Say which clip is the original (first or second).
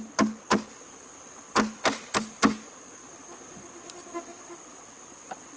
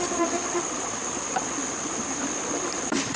first